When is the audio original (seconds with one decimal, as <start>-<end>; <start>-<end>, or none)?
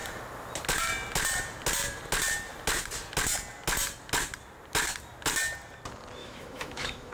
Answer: 0.0-6.2